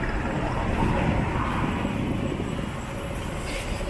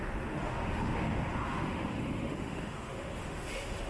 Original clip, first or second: first